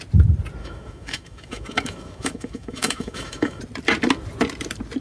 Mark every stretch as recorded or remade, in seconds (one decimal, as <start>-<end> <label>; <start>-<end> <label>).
0.0-0.6 recorded; 0.6-3.6 remade; 3.6-5.0 recorded

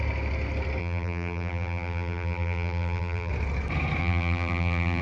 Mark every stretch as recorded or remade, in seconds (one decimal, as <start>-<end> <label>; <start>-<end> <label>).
0.0-0.8 recorded; 0.8-3.3 remade; 3.3-4.0 recorded; 4.0-5.0 remade